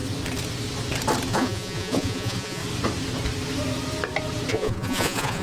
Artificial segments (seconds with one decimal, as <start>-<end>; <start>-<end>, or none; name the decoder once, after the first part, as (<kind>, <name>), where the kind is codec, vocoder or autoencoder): 1.3-2.6 (vocoder, Vocos); 4.5-5.4